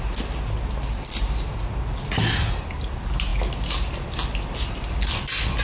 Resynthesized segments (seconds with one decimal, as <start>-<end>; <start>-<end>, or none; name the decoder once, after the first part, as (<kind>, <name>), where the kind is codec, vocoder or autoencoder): none